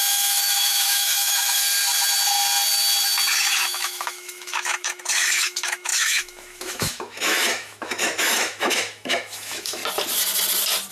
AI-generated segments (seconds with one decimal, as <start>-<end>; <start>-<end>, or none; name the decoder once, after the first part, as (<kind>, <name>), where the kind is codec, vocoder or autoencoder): 0.0-1.6 (autoencoder, DAC-VAE); 3.4-9.8